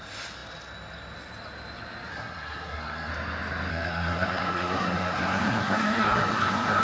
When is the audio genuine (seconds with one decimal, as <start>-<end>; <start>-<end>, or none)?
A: 0.0-2.1; 3.1-3.7